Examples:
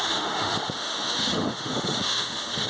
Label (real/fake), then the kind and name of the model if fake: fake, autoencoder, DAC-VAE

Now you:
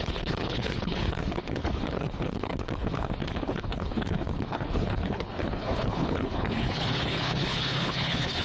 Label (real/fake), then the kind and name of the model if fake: fake, codec, HILCodec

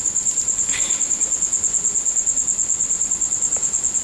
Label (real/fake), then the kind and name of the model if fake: real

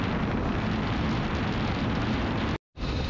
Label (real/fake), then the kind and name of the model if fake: real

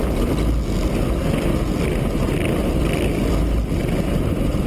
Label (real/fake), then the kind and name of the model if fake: real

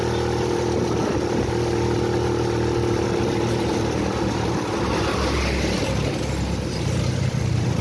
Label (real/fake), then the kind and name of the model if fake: real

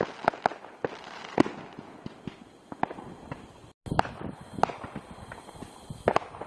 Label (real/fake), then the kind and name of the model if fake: real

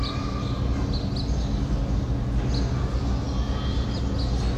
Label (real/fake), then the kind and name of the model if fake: real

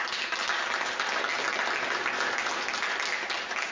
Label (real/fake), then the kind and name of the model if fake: real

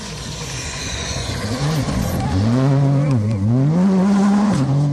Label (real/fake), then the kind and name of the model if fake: fake, vocoder, Vocos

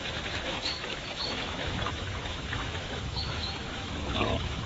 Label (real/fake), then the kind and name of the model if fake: fake, autoencoder, DAC-VAE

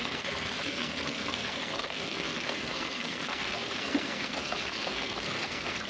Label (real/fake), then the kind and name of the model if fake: fake, codec, SNAC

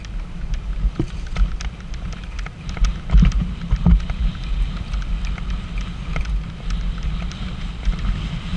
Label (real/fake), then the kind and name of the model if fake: real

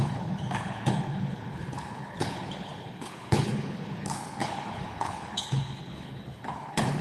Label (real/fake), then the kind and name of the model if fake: fake, codec, HILCodec